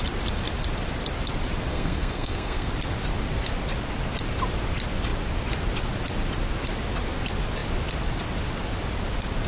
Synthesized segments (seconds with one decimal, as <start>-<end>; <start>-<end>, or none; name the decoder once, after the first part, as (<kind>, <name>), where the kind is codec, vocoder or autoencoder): 1.7-2.7 (codec, SNAC)

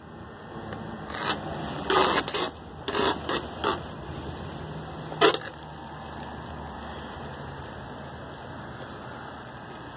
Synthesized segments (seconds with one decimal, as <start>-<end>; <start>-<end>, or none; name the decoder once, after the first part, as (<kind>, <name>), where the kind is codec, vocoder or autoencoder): 1.7-2.2 (vocoder, BigVGAN v2)